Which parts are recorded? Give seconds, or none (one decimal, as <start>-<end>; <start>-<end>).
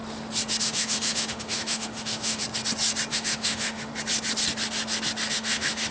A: 0.0-0.6; 2.4-3.1; 3.9-5.3